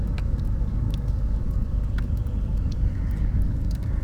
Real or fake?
fake